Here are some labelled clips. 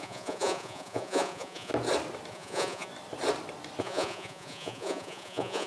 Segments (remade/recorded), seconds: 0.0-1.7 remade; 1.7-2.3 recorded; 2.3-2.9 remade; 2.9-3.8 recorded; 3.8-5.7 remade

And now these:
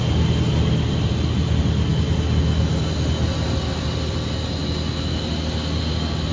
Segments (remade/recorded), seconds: 0.0-6.3 recorded